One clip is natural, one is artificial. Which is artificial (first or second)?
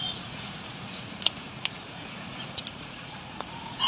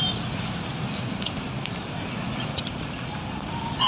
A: first